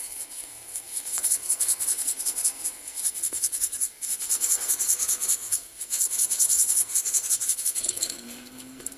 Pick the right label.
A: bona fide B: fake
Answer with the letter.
B